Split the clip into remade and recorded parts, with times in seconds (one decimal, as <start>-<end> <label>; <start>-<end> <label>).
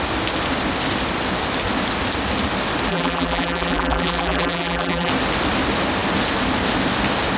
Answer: 0.0-2.9 recorded; 2.9-5.1 remade; 5.1-7.4 recorded